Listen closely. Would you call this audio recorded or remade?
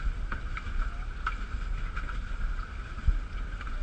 recorded